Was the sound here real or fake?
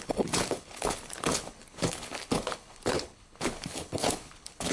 fake